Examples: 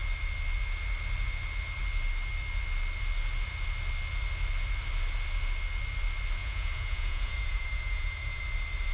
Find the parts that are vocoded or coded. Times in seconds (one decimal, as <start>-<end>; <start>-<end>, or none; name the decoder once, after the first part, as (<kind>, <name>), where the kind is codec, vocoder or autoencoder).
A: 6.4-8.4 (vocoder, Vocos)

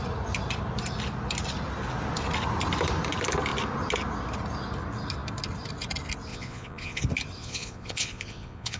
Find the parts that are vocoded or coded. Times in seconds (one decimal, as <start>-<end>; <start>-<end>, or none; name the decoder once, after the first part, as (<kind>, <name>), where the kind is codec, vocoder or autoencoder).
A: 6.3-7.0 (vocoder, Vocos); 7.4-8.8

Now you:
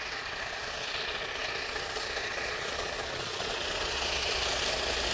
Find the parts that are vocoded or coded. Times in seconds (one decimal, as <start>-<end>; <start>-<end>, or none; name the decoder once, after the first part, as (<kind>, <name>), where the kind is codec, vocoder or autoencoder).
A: 2.3-4.3 (vocoder, Vocos)

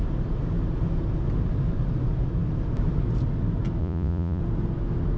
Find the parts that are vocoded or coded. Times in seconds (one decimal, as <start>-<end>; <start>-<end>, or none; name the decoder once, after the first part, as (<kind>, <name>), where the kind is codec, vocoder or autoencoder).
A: 3.8-4.4 (vocoder, Vocos)

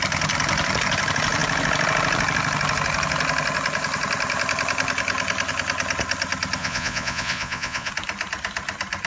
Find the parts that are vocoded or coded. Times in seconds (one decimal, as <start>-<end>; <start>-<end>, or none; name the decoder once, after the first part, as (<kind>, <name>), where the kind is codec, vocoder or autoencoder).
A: 6.6-7.9 (vocoder, Vocos)